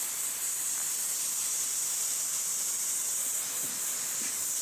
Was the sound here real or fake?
fake